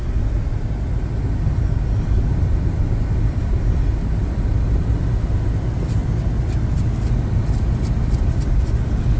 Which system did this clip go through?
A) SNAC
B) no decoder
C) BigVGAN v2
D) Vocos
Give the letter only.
B